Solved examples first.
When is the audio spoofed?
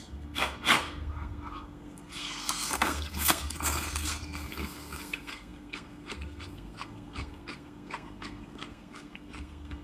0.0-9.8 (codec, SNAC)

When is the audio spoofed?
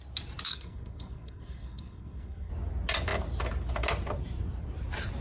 0.5-2.5 (codec, SNAC)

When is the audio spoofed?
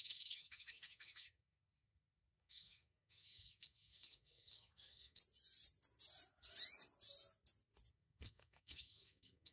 0.0-5.2 (codec, SNAC); 7.9-9.5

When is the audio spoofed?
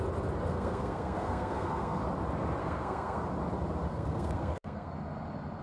0.5-2.0 (codec, SNAC); 2.6-3.2; 3.9-4.9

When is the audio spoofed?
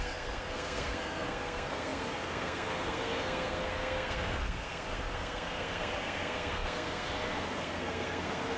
0.0-8.6 (codec, SNAC)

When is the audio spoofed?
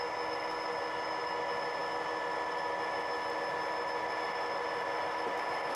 none